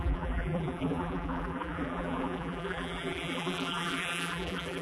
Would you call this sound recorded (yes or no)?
no